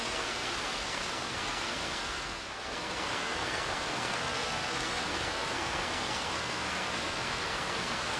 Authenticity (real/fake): fake